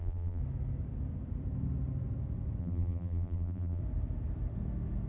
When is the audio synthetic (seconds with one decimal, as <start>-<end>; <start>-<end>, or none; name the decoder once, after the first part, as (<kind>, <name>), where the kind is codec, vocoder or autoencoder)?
0.0-0.4 (vocoder, BigVGAN v2); 2.6-3.8